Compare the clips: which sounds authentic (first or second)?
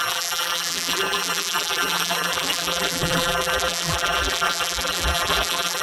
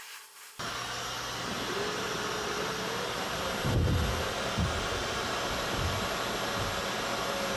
second